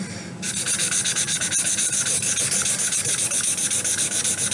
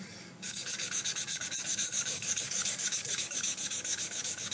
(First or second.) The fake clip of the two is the second